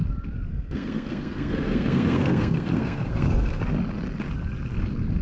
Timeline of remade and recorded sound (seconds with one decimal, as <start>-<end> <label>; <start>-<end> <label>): 0.0-0.5 recorded; 0.5-3.6 remade; 3.6-5.2 recorded